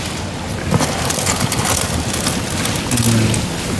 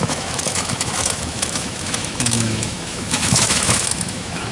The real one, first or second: first